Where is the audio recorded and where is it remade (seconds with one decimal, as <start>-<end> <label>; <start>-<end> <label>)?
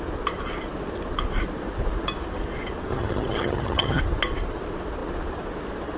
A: 0.0-2.9 recorded; 2.9-4.0 remade; 4.0-6.0 recorded